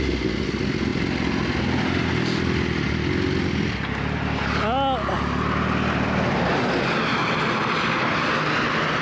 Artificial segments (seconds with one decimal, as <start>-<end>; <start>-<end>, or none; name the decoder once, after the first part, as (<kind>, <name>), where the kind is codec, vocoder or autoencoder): none